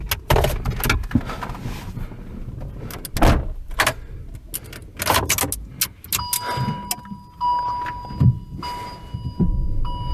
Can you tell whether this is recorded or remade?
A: recorded